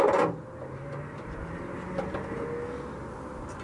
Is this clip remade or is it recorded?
recorded